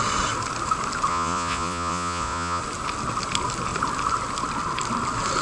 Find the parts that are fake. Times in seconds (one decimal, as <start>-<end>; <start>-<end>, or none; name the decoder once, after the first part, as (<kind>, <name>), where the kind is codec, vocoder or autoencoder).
1.1-2.6 (vocoder, Vocos)